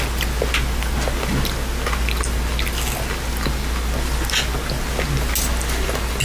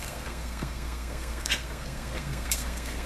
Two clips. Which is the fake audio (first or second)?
second